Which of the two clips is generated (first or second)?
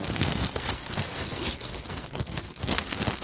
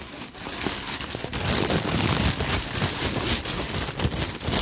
first